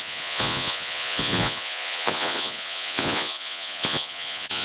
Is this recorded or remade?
remade